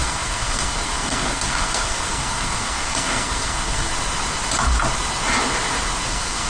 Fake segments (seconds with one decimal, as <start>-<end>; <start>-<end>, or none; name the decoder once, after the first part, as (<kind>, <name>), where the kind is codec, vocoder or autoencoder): 0.0-3.9 (codec, SNAC); 6.1-6.5